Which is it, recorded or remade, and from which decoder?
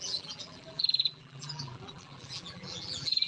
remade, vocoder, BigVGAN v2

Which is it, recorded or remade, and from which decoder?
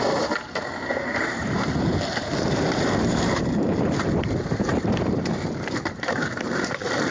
remade, vocoder, BigVGAN v2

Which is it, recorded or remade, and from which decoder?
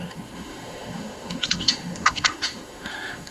remade, autoencoder, DAC-VAE